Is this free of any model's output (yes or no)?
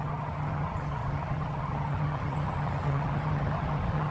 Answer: no